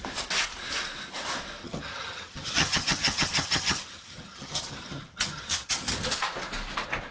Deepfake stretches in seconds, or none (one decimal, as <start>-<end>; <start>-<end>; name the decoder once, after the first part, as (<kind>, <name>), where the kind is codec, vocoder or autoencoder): 1.6-5.9 (vocoder, HiFi-GAN)